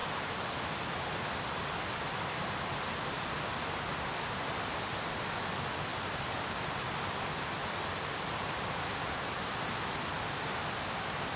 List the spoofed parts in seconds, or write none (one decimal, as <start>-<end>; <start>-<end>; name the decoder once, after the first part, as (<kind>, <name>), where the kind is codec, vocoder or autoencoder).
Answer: 0.0-0.9 (vocoder, BigVGAN v2); 5.9-9.7